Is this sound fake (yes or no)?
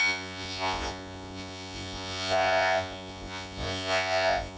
yes